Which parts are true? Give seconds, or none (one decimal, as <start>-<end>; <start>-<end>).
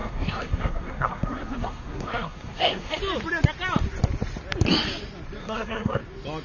3.0-5.4; 6.0-6.4